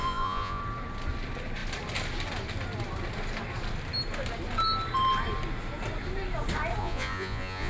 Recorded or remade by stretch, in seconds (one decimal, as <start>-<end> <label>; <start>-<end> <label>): 0.0-0.6 remade; 0.6-6.8 recorded; 6.8-7.7 remade